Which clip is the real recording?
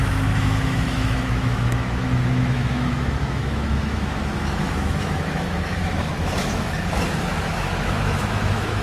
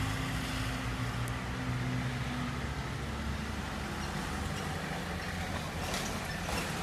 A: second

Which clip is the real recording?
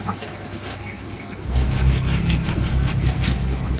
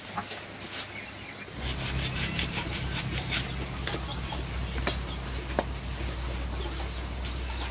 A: second